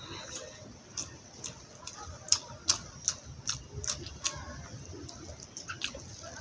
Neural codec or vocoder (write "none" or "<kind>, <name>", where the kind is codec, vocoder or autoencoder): none